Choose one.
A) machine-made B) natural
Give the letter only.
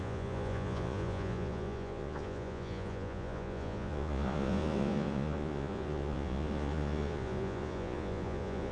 A